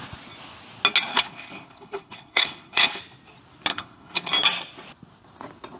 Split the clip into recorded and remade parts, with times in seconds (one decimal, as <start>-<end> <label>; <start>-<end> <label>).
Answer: 0.0-1.1 recorded; 1.1-3.0 remade; 3.0-3.7 recorded; 3.7-4.3 remade; 4.3-5.8 recorded